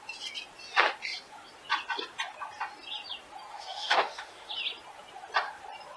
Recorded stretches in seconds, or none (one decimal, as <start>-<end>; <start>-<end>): 0.0-3.5; 4.5-6.0